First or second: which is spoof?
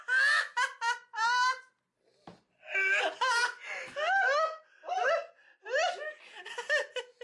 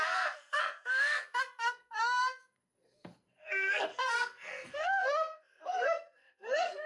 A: second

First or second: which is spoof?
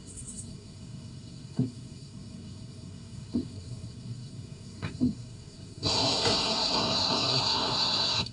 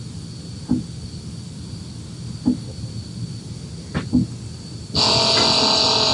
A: first